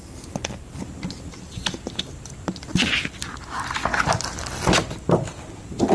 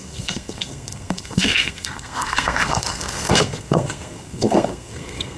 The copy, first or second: second